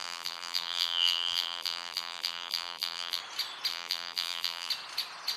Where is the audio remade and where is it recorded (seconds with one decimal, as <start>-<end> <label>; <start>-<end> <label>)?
0.0-3.2 remade; 3.2-3.7 recorded; 3.7-4.7 remade; 4.7-5.4 recorded